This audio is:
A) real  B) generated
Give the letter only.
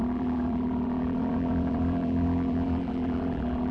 B